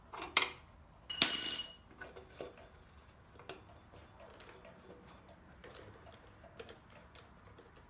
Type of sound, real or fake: real